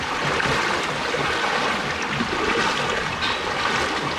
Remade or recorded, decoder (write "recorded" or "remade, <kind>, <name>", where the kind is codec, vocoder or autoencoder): recorded